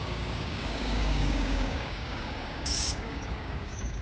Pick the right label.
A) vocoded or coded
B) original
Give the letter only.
A